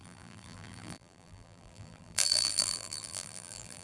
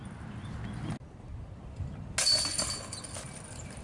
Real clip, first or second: second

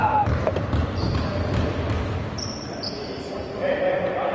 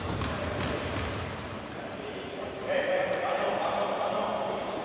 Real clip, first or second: first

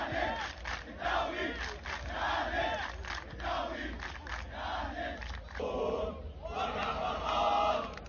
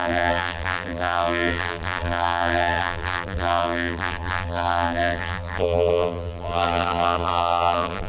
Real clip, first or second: first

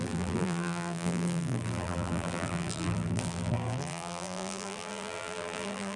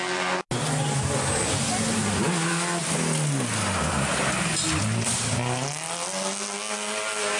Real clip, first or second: second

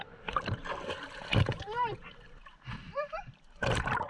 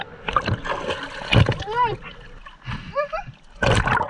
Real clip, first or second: second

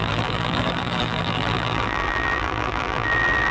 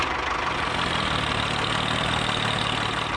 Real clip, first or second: second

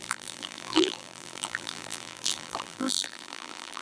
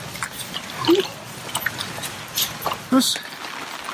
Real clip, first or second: second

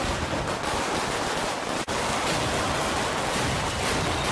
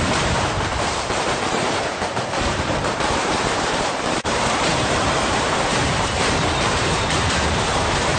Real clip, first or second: first